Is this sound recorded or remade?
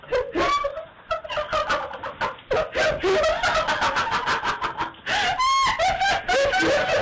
recorded